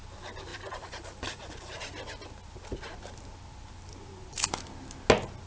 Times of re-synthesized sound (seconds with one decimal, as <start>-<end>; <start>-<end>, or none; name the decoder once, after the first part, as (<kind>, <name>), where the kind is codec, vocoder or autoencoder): 0.5-1.8 (vocoder, BigVGAN v2)